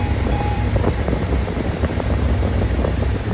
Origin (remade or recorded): remade